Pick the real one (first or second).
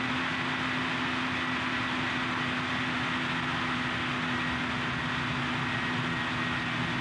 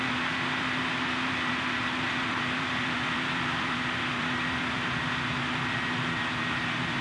first